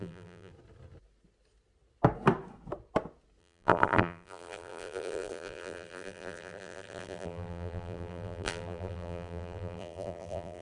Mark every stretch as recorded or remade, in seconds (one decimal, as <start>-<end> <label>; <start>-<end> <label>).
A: 0.0-0.5 remade; 0.5-3.4 recorded; 3.4-10.6 remade

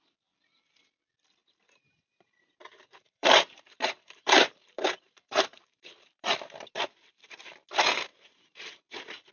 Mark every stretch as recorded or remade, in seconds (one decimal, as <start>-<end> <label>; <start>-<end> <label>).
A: 0.0-1.4 recorded; 1.4-6.3 remade; 6.3-8.1 recorded; 8.1-9.3 remade